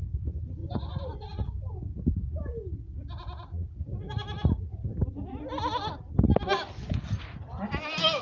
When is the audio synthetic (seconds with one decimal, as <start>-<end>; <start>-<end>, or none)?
none